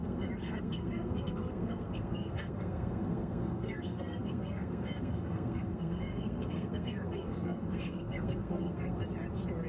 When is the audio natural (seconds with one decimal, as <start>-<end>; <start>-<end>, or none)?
9.0-9.7